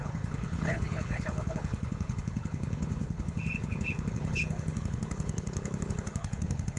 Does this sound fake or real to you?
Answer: fake